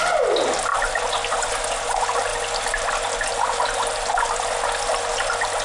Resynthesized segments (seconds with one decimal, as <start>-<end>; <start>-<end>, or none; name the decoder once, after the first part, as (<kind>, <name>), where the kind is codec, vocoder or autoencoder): none